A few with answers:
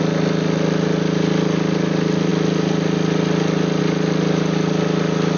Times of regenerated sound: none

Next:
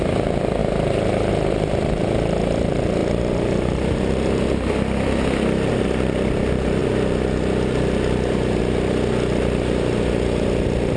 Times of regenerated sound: none

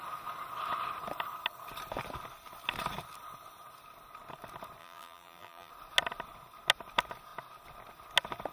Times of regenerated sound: 4.8-5.7

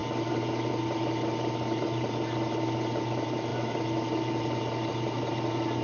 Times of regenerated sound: none